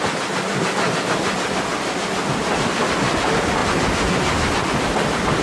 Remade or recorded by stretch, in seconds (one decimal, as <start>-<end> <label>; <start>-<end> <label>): 0.0-5.4 recorded